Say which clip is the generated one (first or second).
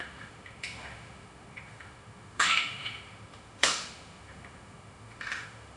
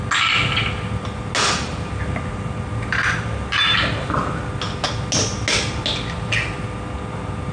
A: first